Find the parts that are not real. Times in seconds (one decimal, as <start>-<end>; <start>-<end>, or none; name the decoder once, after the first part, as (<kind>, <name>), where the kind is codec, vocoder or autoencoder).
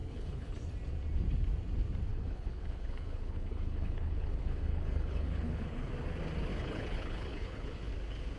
0.0-0.5 (codec, HILCodec); 2.1-5.9; 6.5-7.9